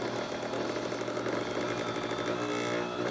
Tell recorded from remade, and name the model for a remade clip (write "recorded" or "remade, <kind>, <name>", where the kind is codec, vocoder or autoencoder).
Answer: recorded